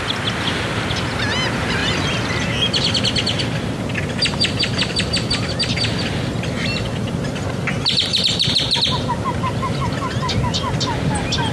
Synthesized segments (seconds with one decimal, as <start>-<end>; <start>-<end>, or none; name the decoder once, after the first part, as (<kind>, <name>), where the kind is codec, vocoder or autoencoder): none